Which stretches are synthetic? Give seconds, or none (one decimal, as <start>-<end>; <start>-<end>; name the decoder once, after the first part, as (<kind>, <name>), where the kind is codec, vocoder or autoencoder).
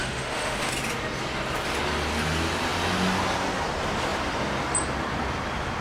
0.0-0.7 (autoencoder, DAC-VAE)